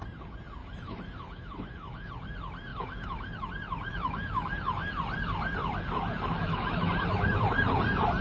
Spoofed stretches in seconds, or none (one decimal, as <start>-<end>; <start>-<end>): 0.6-2.1; 2.7-3.5; 3.9-5.0; 6.1-6.8